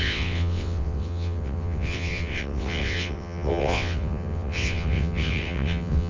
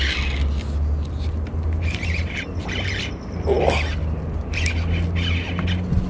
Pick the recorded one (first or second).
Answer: second